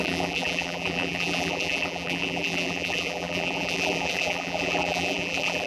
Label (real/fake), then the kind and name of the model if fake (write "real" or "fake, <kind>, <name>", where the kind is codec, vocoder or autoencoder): fake, vocoder, BigVGAN v2